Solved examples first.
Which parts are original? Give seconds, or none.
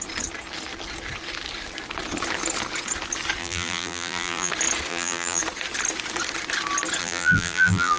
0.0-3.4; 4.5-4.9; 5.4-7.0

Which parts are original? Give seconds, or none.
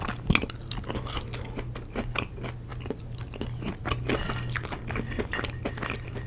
0.0-6.3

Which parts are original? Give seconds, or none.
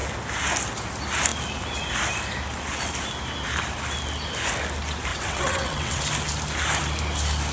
0.0-5.1; 6.0-7.5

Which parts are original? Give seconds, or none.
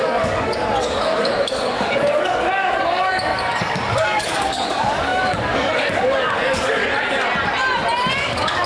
6.8-8.1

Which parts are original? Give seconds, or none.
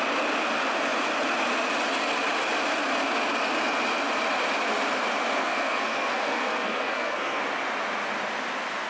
0.0-5.4; 7.4-8.9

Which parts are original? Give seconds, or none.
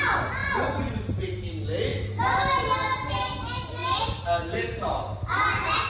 0.0-0.4; 0.9-5.9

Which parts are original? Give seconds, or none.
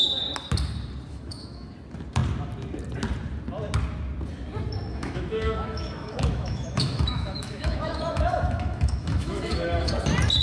0.0-1.1; 1.7-4.9; 9.9-10.4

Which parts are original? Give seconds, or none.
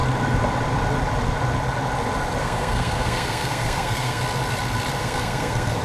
0.0-2.4; 4.2-5.0